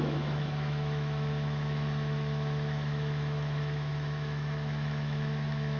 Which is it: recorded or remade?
remade